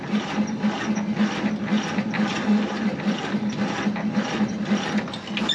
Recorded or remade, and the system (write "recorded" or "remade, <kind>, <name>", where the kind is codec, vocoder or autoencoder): recorded